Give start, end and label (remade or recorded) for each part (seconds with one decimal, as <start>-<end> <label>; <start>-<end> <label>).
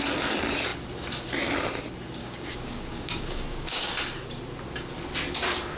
0.0-2.2 recorded; 2.2-3.9 remade; 3.9-5.8 recorded